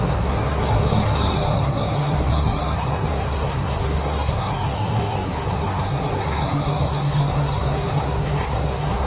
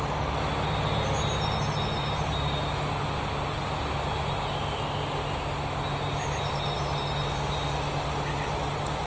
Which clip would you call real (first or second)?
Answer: second